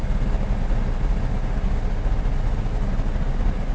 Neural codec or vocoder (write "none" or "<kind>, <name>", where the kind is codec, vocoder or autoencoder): none